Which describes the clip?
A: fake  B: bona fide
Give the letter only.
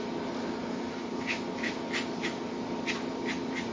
B